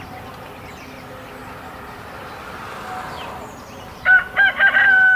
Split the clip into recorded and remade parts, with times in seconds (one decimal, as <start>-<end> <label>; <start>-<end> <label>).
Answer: 0.0-1.4 recorded; 1.4-4.5 remade; 4.5-5.2 recorded